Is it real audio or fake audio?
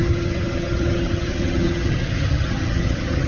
fake